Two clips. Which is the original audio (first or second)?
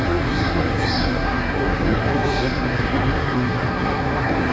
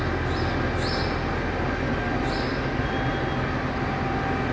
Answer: second